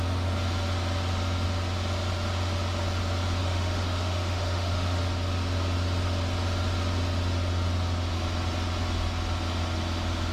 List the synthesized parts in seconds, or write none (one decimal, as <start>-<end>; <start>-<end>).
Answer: 3.4-5.0

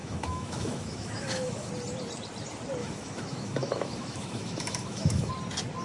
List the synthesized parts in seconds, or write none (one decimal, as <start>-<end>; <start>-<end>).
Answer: 0.0-1.7; 2.8-5.3

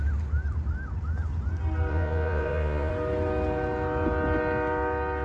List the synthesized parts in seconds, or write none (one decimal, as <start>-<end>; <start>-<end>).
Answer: 1.9-2.9

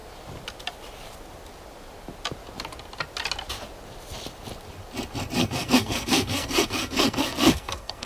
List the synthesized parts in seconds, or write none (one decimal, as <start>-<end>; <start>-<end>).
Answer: 5.4-8.1

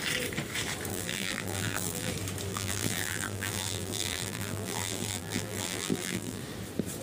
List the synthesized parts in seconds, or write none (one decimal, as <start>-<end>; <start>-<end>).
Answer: 0.9-2.1; 2.5-6.4

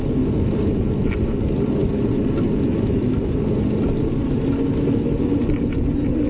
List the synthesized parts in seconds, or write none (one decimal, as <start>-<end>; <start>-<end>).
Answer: none

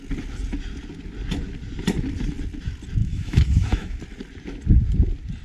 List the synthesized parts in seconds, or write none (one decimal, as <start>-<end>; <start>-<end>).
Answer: 3.0-4.0

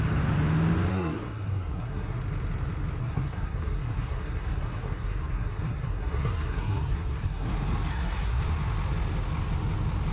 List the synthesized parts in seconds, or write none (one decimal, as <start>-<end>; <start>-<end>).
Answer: 0.9-2.2; 3.0-7.5; 7.9-8.4